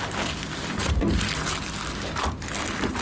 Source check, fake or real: real